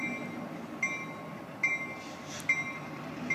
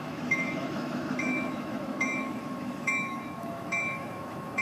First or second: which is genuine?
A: first